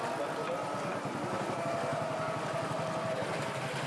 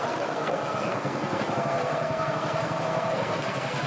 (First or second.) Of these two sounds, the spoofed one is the second